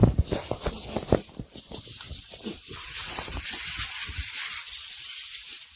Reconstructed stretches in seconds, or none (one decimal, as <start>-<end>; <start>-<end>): none